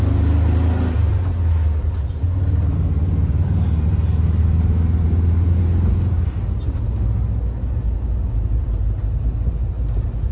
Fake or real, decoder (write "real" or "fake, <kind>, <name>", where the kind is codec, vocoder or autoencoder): real